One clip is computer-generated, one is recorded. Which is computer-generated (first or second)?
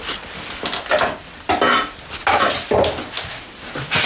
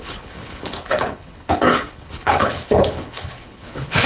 second